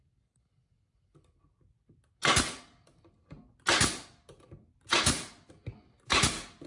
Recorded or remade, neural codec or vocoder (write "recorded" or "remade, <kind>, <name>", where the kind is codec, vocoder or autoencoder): recorded